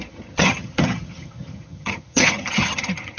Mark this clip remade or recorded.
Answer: remade